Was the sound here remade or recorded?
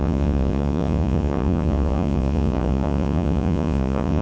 remade